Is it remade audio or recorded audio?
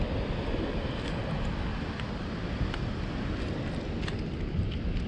recorded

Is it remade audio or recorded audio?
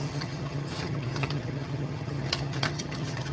remade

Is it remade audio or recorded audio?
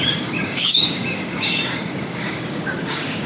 remade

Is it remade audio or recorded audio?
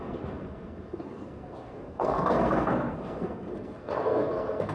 remade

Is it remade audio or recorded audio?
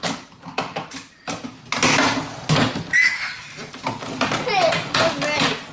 recorded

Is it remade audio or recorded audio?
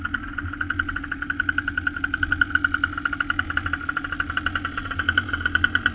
recorded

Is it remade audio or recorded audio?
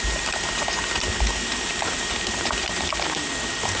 recorded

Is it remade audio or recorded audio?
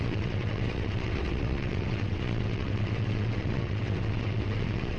remade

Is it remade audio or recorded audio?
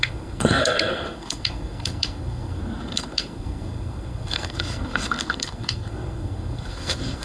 remade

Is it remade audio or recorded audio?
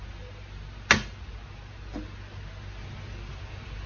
recorded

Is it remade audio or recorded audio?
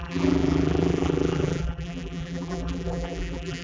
remade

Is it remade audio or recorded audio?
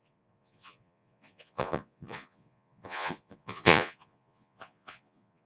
remade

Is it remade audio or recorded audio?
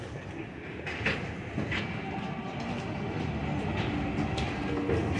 recorded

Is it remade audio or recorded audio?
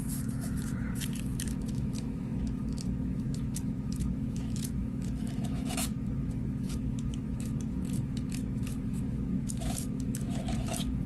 remade